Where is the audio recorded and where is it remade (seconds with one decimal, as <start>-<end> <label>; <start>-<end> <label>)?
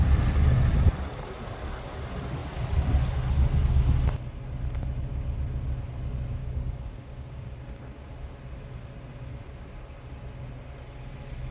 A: 0.0-6.4 recorded; 6.4-7.6 remade; 7.6-11.5 recorded